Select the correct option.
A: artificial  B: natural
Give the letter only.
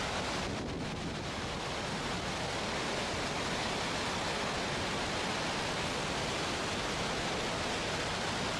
B